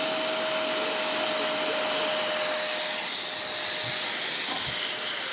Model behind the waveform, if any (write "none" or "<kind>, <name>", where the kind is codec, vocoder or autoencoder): none